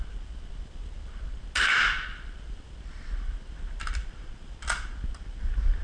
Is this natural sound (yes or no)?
yes